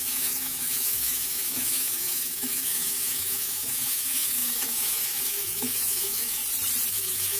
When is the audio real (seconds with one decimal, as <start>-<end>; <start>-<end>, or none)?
6.4-6.9